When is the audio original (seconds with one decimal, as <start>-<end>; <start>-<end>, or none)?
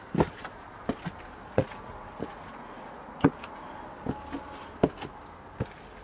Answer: 0.0-1.4; 3.3-6.0